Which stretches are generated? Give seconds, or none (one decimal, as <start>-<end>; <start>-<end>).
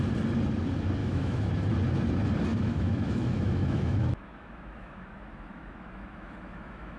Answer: 1.0-1.5; 2.5-7.0